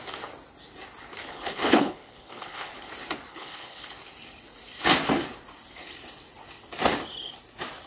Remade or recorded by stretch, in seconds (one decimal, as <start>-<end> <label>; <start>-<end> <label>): 0.0-1.3 recorded; 1.3-2.7 remade; 2.7-3.3 recorded; 3.3-3.9 remade; 3.9-7.9 recorded